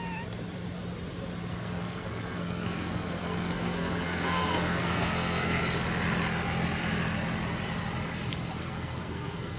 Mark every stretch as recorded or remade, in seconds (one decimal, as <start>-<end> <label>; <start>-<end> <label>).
0.0-1.5 recorded; 1.5-5.6 remade; 5.6-8.6 recorded; 8.6-9.6 remade